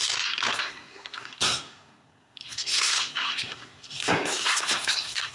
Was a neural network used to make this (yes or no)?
yes